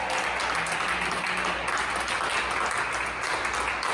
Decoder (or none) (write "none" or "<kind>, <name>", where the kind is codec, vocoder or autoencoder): none